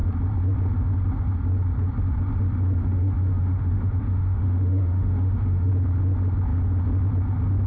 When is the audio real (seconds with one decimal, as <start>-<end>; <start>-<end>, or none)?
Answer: 0.0-2.8; 5.7-7.7